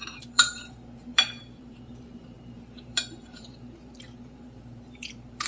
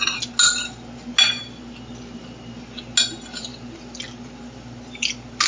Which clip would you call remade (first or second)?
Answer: first